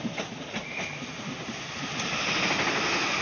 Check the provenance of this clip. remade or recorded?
recorded